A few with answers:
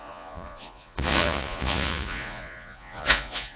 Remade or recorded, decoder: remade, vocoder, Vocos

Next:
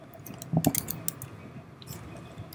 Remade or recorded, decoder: recorded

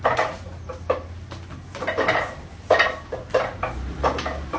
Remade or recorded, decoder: recorded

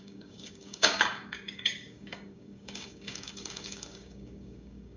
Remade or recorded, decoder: remade, codec, DAC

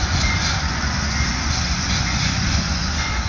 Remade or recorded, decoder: remade, vocoder, Vocos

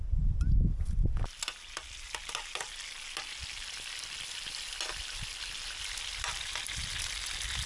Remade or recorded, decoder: recorded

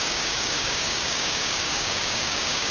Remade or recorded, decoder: remade, codec, DAC